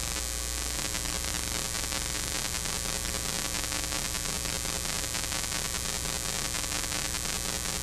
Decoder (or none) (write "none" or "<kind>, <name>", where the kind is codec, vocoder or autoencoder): none